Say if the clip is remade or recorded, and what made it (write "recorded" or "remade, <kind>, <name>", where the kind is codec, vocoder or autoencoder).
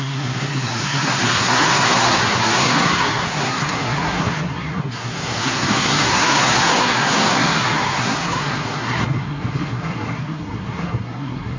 remade, codec, SNAC